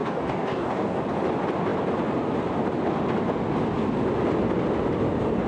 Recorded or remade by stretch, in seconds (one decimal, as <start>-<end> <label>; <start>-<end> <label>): 0.0-1.0 remade; 1.0-5.5 recorded